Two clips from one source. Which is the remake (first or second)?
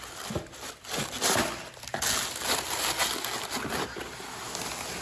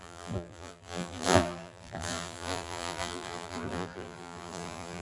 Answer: second